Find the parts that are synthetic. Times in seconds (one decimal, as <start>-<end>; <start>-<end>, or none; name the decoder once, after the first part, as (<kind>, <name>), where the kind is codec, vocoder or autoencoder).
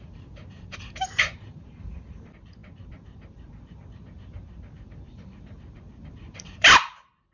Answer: 0.0-7.3 (vocoder, BigVGAN v2)